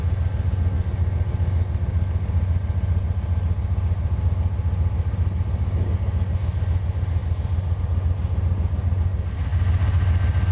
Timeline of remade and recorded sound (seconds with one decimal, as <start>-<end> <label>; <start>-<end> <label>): 0.0-10.5 recorded